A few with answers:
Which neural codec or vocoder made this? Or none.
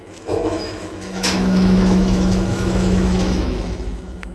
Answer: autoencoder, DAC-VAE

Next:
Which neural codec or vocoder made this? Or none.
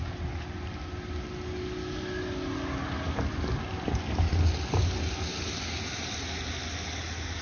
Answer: none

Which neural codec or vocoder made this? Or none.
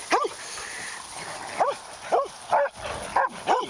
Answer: none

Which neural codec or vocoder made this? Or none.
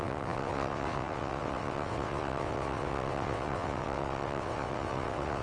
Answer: vocoder, WaveNeXt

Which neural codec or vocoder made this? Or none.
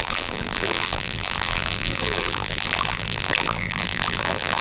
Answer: vocoder, BigVGAN v2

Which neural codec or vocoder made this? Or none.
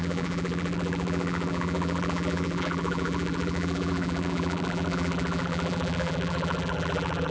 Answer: vocoder, BigVGAN v2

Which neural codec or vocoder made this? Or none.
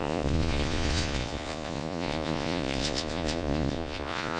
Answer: vocoder, Vocos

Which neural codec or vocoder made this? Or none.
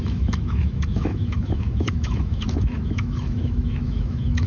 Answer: autoencoder, DAC-VAE